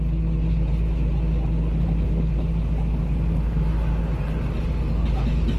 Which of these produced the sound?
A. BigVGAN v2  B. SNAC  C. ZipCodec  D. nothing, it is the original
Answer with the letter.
D